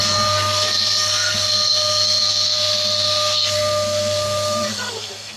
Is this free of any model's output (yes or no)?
no